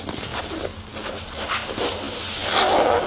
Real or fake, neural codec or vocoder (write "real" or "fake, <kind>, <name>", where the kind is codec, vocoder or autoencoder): real